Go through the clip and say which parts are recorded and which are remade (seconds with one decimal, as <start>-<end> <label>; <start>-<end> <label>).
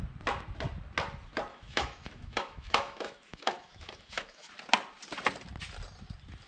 0.0-1.5 recorded; 1.5-4.5 remade; 4.5-6.5 recorded